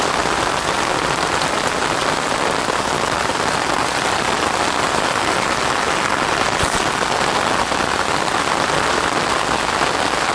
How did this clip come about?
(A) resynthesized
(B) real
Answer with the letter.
B